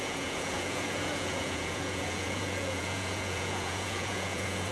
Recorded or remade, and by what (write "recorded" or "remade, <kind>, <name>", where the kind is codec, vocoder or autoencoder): remade, vocoder, Vocos